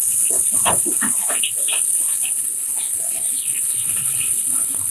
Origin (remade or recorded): remade